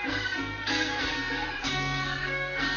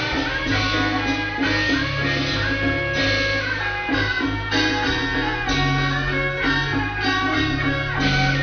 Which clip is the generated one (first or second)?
first